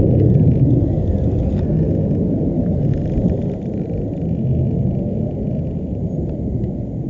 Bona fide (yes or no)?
yes